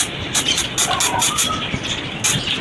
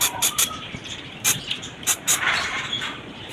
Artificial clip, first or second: second